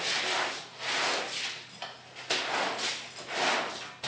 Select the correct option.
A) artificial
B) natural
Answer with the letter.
B